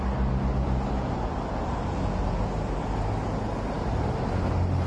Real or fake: real